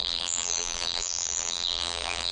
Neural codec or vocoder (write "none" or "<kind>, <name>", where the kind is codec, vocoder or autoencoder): vocoder, BigVGAN v2